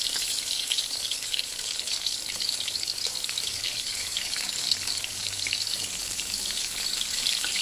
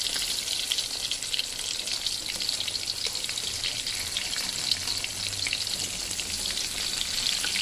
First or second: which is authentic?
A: second